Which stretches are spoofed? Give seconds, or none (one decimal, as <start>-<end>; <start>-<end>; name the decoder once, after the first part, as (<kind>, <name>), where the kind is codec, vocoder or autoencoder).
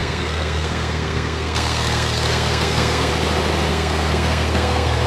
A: 0.0-3.1 (codec, SNAC); 3.7-5.1